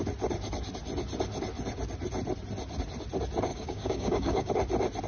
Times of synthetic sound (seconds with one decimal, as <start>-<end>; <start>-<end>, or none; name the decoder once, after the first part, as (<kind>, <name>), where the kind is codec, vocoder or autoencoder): 3.5-4.5 (codec, DAC)